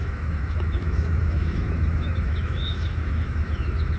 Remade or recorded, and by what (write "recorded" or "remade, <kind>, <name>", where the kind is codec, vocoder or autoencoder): remade, autoencoder, DAC-VAE